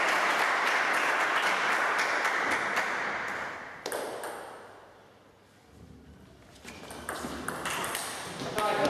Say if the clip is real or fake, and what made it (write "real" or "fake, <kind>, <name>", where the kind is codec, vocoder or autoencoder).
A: real